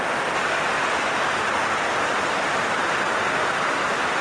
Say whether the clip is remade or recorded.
recorded